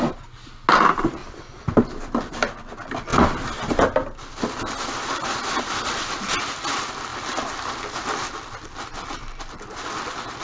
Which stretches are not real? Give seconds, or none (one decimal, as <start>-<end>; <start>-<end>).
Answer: none